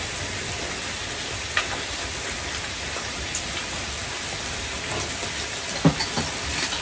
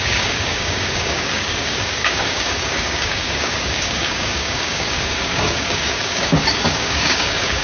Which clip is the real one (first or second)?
first